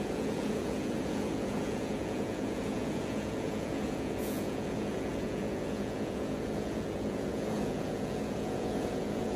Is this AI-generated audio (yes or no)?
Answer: yes